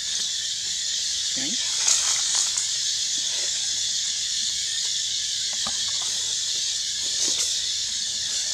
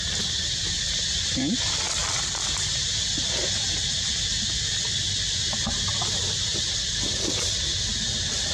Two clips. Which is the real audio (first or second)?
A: second